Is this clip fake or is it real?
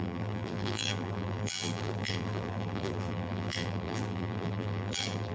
fake